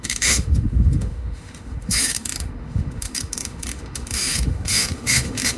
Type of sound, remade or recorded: remade